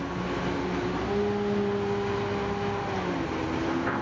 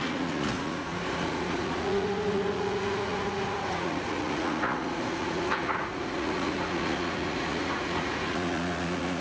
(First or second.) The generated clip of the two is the second